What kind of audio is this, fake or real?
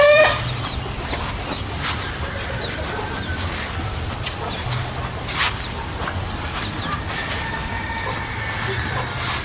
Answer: fake